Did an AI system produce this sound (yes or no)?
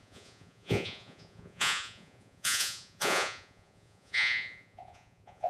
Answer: yes